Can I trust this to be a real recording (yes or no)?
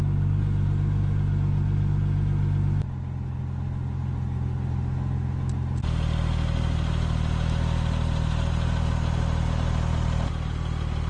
yes